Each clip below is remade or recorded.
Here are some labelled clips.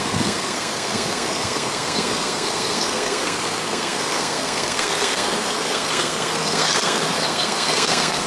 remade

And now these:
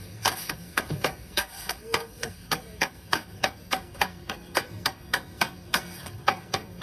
remade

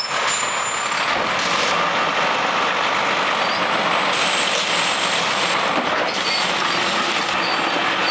recorded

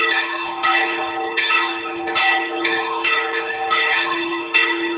remade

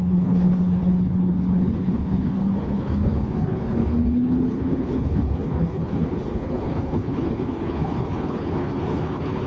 remade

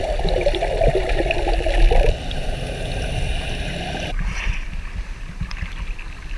recorded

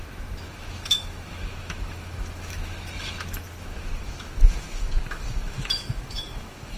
remade